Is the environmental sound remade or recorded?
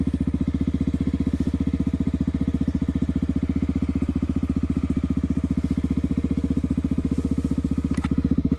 recorded